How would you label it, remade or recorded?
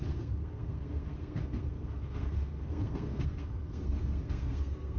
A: remade